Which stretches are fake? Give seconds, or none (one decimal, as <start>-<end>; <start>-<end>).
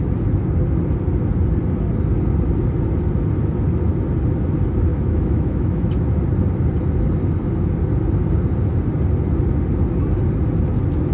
4.9-6.1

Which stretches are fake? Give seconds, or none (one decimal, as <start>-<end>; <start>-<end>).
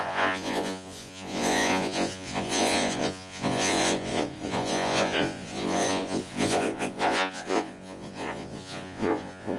0.0-9.6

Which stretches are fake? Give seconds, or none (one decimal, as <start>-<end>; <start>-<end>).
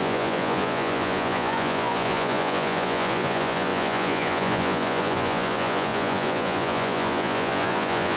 0.0-8.2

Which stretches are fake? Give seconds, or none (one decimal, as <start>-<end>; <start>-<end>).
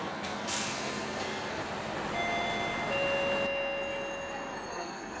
0.0-1.6; 4.7-5.2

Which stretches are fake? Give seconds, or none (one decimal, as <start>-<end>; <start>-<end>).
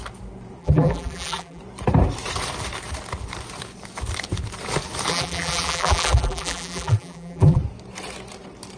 0.6-1.6; 5.1-7.6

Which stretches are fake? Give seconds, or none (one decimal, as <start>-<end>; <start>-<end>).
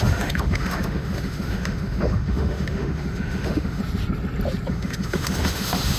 0.0-3.8; 4.7-6.0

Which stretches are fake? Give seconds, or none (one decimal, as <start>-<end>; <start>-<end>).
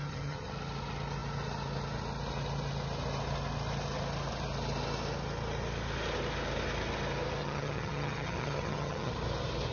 0.0-0.5; 7.4-9.1